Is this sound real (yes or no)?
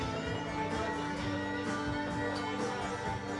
yes